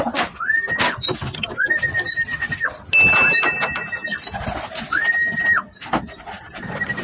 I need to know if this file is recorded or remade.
recorded